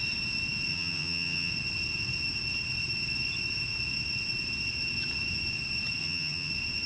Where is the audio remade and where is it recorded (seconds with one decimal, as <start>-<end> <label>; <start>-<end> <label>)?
0.0-0.7 recorded; 0.7-1.5 remade; 1.5-6.0 recorded; 6.0-6.5 remade; 6.5-6.9 recorded